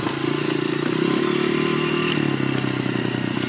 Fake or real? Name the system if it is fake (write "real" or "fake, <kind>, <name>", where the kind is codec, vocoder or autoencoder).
real